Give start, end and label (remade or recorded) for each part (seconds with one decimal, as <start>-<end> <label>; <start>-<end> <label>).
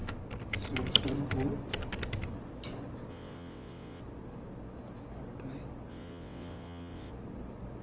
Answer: 0.0-3.1 recorded; 3.1-4.0 remade; 4.0-5.9 recorded; 5.9-7.1 remade; 7.1-7.8 recorded